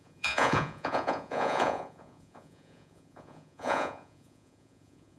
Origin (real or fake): fake